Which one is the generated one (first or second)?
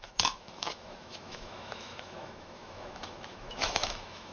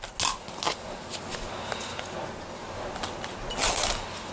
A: first